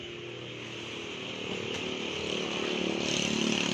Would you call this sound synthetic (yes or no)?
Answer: no